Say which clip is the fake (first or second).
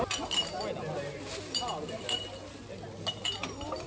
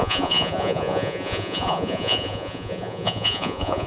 second